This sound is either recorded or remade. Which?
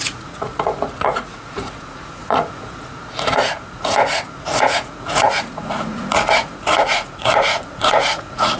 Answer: remade